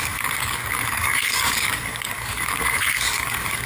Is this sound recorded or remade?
remade